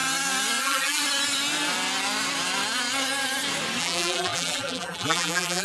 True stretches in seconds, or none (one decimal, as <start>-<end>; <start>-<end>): 0.0-0.6; 1.0-3.8